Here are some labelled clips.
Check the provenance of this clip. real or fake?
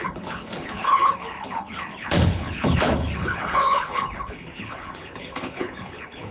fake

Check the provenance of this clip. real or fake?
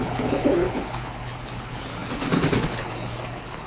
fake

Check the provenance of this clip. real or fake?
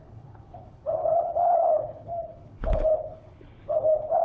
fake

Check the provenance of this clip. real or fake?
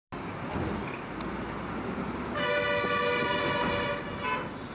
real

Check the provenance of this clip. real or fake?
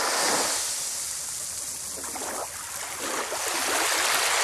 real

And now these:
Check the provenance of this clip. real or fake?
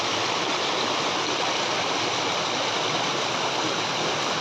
real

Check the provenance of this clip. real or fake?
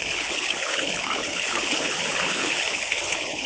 fake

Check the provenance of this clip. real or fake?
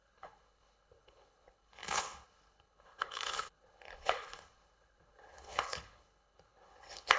fake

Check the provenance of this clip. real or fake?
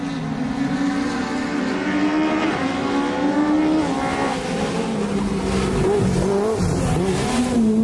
real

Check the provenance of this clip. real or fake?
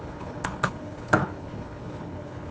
fake